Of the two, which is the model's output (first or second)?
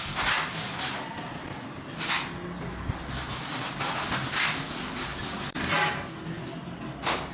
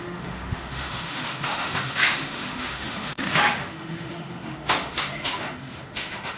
second